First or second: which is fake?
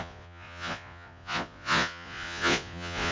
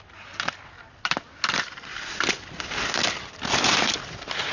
first